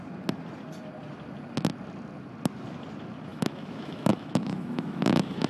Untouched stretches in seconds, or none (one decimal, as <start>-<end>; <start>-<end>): 0.0-3.3